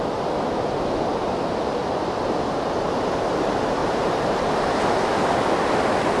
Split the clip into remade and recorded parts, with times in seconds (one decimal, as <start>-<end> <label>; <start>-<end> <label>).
0.0-1.1 recorded; 1.1-1.8 remade; 1.8-3.8 recorded; 3.8-5.1 remade; 5.1-6.2 recorded